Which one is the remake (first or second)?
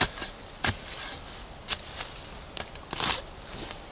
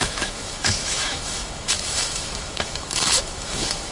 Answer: second